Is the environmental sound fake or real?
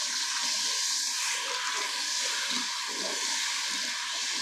real